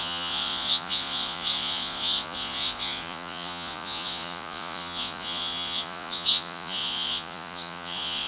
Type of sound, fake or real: fake